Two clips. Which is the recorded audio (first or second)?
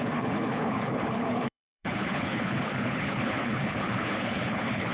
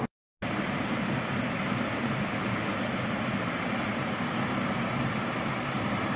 second